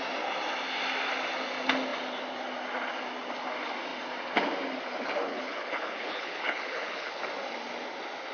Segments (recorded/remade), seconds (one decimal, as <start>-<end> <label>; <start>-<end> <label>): 0.0-5.3 recorded; 5.3-7.2 remade; 7.2-8.3 recorded